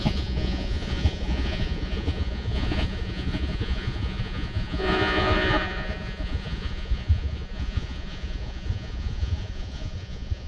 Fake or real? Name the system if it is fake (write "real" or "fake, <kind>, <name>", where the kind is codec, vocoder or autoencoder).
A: fake, vocoder, Vocos